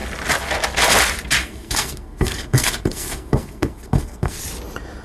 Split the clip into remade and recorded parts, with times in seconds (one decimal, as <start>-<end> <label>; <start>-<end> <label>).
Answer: 0.0-1.4 recorded; 1.4-4.4 remade; 4.4-5.0 recorded